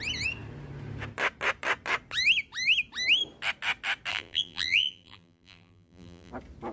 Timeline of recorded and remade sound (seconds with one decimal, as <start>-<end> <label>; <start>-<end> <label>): 0.0-4.1 recorded; 4.1-6.3 remade; 6.3-6.7 recorded